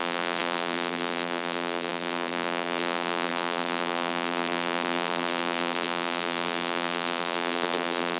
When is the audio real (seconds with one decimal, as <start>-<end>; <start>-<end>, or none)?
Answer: none